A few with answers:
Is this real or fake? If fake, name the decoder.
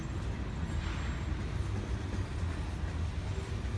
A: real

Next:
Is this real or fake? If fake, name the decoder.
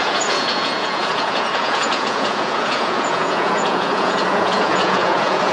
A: fake, vocoder, Vocos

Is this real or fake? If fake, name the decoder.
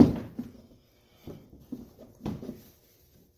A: real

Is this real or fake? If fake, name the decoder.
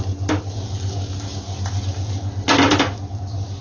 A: real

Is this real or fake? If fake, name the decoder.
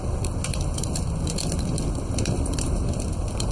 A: real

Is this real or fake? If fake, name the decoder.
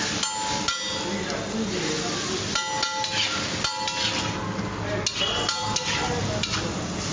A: real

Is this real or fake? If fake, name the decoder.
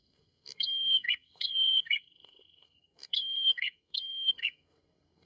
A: fake, codec, SNAC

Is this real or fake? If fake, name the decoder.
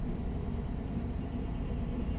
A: real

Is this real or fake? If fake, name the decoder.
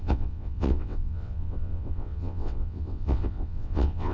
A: fake, vocoder, WaveNeXt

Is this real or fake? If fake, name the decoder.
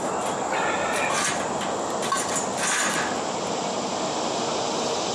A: real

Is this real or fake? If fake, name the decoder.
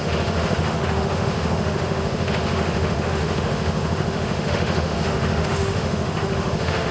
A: fake, autoencoder, DAC-VAE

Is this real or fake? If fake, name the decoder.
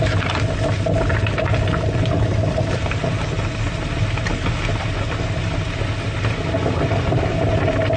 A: real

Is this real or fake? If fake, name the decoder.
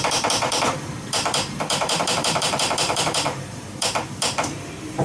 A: fake, vocoder, BigVGAN v2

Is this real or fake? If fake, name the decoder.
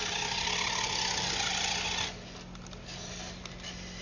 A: real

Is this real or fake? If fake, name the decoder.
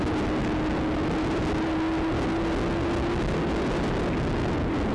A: real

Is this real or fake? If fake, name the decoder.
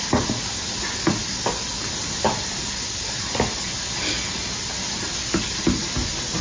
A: real